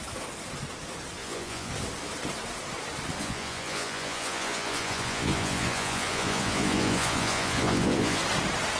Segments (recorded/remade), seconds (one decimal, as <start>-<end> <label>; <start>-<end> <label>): 0.0-1.2 recorded; 1.2-1.7 remade; 1.7-3.2 recorded; 3.2-8.2 remade; 8.2-8.8 recorded